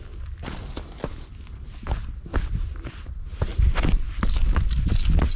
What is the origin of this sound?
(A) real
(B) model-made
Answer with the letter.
A